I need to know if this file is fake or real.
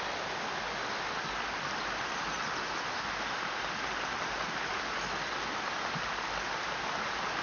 real